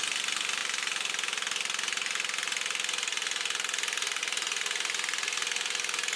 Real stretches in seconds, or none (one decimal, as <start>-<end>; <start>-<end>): 0.0-6.2